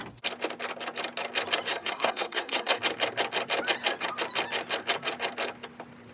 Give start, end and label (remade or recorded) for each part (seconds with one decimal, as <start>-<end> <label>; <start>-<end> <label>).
0.0-1.7 recorded; 1.7-2.8 remade; 2.8-6.1 recorded